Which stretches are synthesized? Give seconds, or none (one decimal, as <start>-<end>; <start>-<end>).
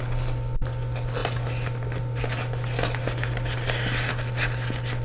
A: none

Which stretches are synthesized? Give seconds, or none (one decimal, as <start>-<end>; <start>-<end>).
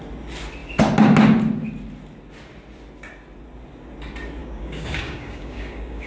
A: 4.4-6.1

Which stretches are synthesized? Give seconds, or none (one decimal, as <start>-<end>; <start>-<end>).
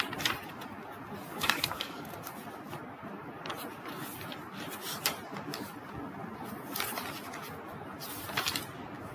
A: 1.3-2.1